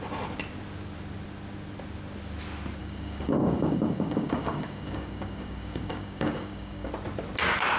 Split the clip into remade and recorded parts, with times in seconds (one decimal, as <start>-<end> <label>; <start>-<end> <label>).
0.0-2.8 recorded; 2.8-6.9 remade; 6.9-7.8 recorded